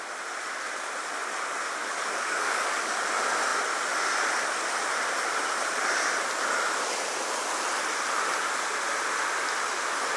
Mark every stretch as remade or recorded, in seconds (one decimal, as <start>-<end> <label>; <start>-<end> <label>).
0.0-1.8 recorded; 1.8-3.0 remade; 3.0-10.2 recorded